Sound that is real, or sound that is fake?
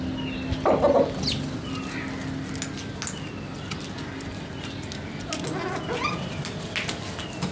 real